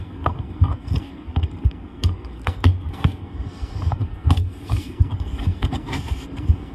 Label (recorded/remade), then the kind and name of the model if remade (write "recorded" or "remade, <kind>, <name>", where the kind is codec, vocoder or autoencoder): remade, codec, SNAC